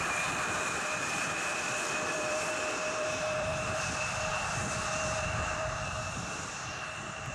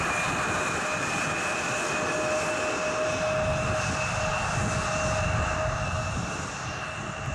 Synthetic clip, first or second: first